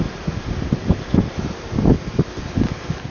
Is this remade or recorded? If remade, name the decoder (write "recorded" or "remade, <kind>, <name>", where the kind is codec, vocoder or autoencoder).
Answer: recorded